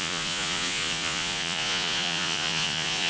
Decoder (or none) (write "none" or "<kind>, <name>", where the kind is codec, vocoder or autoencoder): vocoder, Vocos